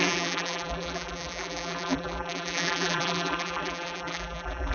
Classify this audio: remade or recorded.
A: remade